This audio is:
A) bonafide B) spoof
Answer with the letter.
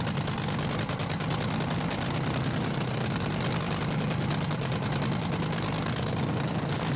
B